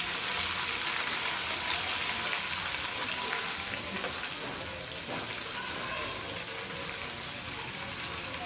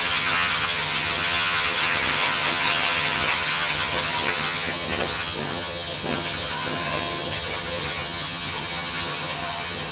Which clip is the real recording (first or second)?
first